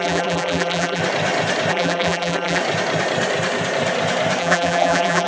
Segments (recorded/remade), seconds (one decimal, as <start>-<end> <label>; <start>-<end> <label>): 0.0-1.0 remade; 1.0-1.7 recorded; 1.7-2.6 remade; 2.6-4.4 recorded; 4.4-5.3 remade